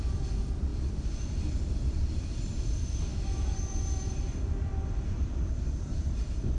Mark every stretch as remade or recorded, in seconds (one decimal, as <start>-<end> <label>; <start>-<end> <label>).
0.0-6.6 remade